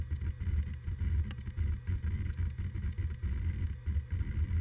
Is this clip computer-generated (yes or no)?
no